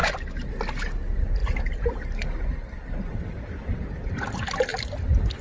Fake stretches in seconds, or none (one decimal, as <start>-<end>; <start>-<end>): 0.0-0.6; 1.4-4.1